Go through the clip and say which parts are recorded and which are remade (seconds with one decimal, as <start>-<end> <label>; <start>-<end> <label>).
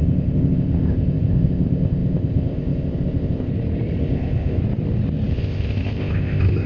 0.0-3.5 remade; 3.5-4.0 recorded; 4.0-4.6 remade; 4.6-5.3 recorded; 5.3-6.7 remade